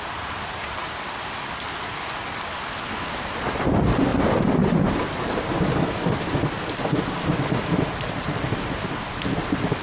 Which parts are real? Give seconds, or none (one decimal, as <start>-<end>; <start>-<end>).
0.8-3.5; 4.1-7.2